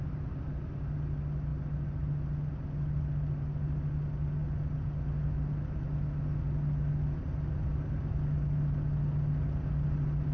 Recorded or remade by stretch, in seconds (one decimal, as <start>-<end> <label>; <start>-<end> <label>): 0.0-10.3 recorded